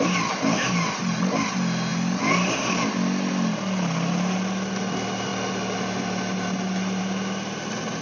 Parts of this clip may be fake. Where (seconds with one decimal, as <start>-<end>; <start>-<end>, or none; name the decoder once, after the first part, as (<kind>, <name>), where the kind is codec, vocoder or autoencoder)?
none